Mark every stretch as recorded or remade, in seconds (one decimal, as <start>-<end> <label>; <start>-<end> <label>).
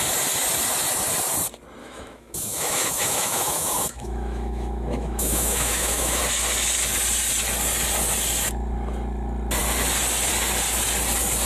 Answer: 0.0-1.8 recorded; 1.8-6.2 remade; 6.2-11.5 recorded